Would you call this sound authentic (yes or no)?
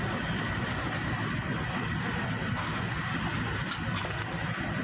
yes